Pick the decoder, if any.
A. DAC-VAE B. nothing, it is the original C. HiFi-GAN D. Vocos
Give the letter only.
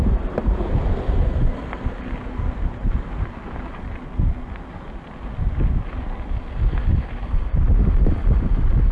B